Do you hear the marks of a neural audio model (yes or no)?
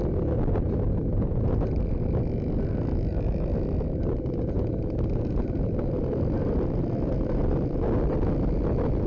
no